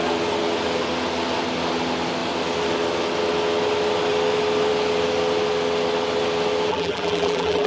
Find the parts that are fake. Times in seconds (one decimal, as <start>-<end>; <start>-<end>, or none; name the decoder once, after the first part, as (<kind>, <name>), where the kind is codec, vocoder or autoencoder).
6.7-7.7 (vocoder, BigVGAN v2)